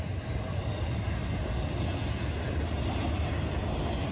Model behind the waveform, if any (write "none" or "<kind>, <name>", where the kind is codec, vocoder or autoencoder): none